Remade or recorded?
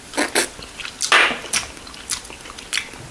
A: recorded